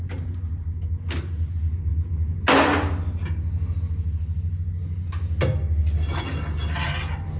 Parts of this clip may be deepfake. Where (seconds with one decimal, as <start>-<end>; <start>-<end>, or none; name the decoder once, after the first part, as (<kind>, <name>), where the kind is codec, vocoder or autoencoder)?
none